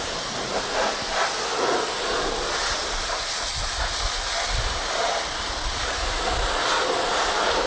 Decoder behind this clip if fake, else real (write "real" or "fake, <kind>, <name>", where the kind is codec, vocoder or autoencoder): real